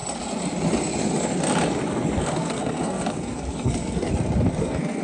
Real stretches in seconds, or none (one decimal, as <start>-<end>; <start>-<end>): 0.0-2.2; 4.1-4.6